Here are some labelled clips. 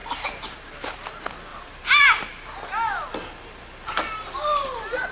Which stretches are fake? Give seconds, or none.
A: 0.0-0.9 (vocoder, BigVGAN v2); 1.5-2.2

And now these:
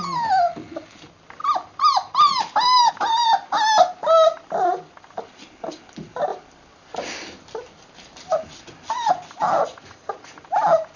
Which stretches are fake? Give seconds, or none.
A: 6.3-9.1 (vocoder, BigVGAN v2)

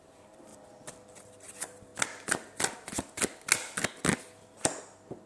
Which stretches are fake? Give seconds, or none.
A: 0.0-0.5 (vocoder, BigVGAN v2); 1.2-1.9

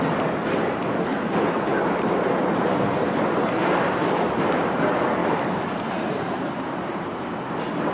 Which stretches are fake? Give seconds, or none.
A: 1.1-2.5 (vocoder, BigVGAN v2); 5.2-7.3